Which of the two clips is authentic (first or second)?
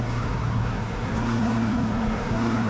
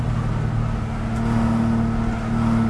second